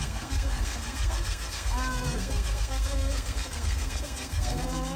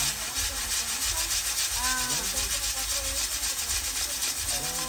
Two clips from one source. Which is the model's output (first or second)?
first